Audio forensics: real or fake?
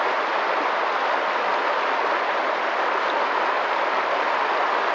real